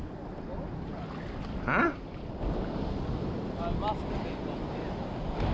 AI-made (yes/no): no